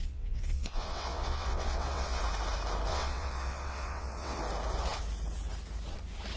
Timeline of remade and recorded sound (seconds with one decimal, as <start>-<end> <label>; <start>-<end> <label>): 0.0-2.2 remade; 2.2-2.9 recorded; 2.9-4.4 remade; 4.4-6.4 recorded